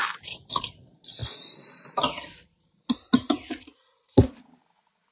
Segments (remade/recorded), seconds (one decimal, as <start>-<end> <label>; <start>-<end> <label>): 0.0-5.1 recorded